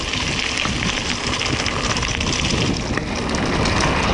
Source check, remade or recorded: recorded